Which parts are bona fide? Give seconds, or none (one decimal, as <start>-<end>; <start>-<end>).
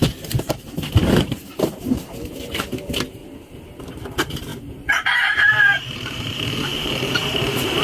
3.2-3.9